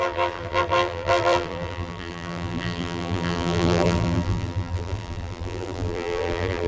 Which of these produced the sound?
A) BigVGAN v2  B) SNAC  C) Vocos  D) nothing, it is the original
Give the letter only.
A